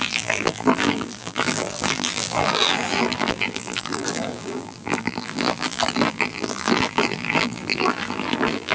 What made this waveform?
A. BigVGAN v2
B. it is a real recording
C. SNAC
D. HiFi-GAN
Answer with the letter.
A